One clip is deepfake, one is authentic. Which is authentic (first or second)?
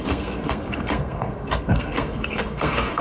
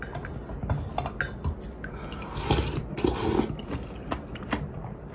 second